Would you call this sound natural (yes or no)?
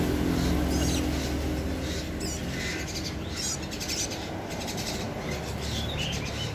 yes